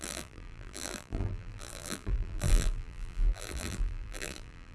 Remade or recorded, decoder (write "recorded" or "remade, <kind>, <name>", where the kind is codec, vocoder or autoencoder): remade, vocoder, BigVGAN v2